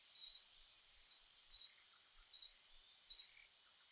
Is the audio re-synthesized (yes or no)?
no